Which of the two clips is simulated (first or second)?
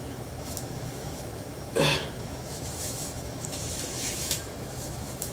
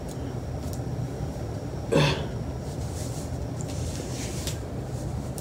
first